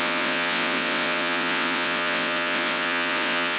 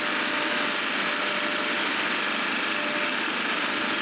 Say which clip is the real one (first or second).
second